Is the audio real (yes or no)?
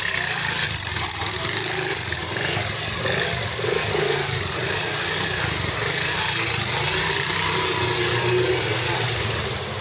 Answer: yes